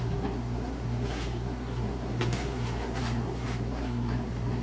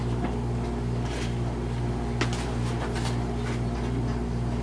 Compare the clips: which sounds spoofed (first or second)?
first